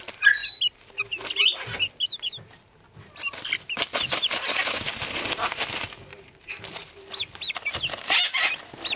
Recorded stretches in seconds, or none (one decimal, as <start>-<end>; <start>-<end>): 0.0-9.0